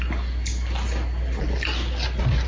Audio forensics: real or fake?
real